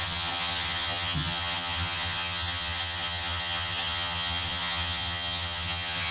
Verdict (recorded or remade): remade